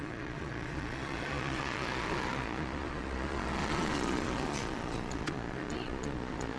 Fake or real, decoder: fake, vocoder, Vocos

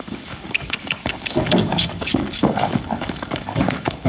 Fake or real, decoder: fake, codec, DAC